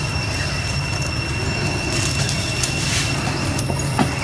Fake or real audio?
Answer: real